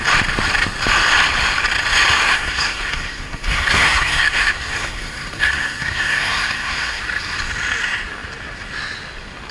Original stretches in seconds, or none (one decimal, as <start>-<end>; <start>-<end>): 0.0-2.3; 7.0-9.5